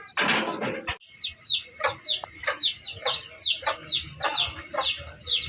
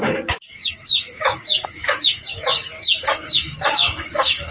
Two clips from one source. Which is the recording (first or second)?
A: first